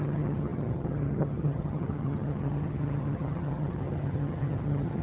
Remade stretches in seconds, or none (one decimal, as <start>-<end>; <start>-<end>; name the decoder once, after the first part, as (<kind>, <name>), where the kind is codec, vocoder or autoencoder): 0.0-5.0 (vocoder, HiFi-GAN)